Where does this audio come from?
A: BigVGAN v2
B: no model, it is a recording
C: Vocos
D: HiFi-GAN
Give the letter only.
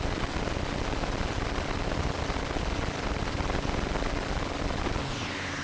A